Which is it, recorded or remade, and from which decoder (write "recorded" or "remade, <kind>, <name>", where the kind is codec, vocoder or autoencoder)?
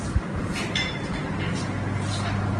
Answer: recorded